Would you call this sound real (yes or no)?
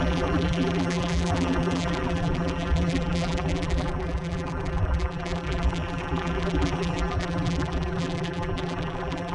no